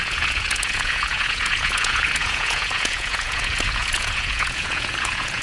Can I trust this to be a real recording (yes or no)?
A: no